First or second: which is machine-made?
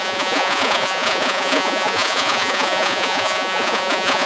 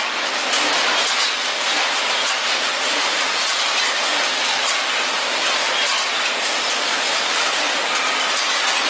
first